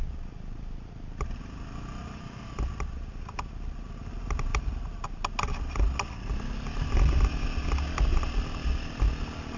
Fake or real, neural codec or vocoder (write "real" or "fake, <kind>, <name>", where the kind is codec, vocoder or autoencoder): real